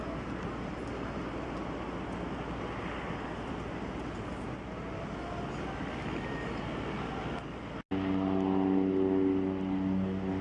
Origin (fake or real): real